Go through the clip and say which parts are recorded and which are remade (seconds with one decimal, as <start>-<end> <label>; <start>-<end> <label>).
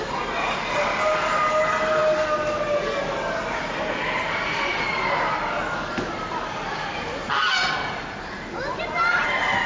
0.0-9.7 recorded